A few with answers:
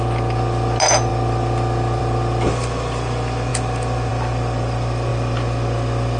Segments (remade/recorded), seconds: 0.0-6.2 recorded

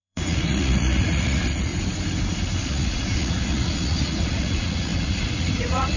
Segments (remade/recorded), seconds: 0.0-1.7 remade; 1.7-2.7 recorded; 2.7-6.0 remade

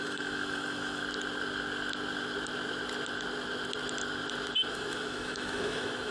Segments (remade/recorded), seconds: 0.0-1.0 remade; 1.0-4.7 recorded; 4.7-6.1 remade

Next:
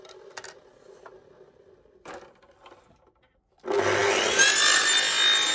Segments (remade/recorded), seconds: 0.0-5.5 recorded

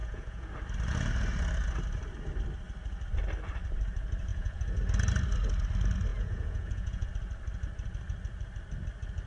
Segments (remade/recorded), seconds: 0.0-0.5 remade; 0.5-4.3 recorded; 4.3-4.8 remade; 4.8-6.1 recorded; 6.1-7.1 remade; 7.1-9.3 recorded